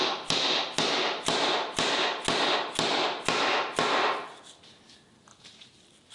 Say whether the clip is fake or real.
real